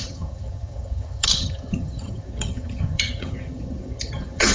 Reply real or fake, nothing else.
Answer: fake